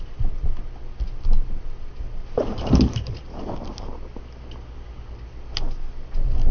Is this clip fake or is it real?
real